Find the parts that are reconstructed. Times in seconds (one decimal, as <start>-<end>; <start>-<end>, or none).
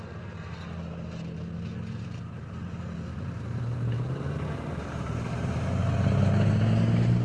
3.1-5.8